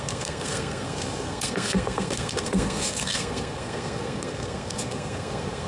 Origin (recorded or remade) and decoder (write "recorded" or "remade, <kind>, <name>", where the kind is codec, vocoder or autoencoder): remade, codec, SNAC